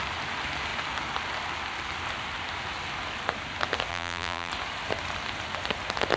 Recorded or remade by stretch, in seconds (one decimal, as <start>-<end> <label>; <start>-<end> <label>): 0.0-3.9 recorded; 3.9-4.5 remade; 4.5-6.2 recorded